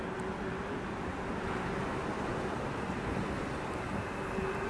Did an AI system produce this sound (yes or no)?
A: no